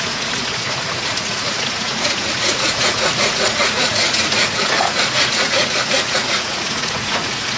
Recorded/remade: remade